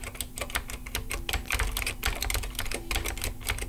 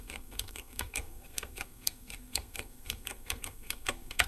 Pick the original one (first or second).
first